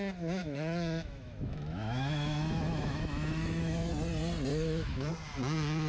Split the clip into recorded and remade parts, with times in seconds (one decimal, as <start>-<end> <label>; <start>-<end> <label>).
0.0-0.4 recorded; 0.4-3.9 remade; 3.9-4.5 recorded; 4.5-5.1 remade; 5.1-5.9 recorded